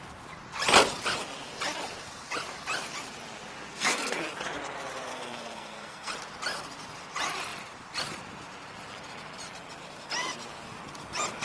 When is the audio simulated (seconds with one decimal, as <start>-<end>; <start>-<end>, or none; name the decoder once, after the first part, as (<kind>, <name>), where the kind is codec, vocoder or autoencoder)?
3.7-4.2 (codec, SNAC); 5.1-6.1